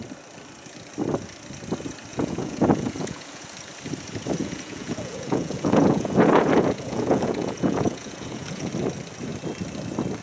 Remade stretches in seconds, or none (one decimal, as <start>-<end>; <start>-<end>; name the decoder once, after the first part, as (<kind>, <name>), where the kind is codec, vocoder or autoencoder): 2.1-3.4 (vocoder, Vocos); 4.4-8.7